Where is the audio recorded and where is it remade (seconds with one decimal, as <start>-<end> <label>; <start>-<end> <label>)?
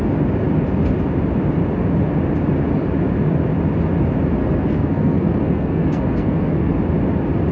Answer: 0.0-4.4 recorded; 4.4-6.7 remade; 6.7-7.5 recorded